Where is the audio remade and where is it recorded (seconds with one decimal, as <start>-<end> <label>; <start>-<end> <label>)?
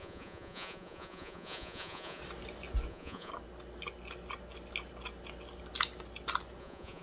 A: 0.0-2.2 remade; 2.2-2.9 recorded; 2.9-3.3 remade; 3.3-6.6 recorded; 6.6-7.0 remade